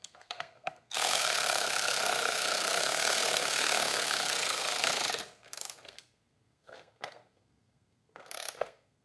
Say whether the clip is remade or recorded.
remade